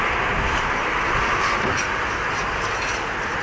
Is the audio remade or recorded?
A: recorded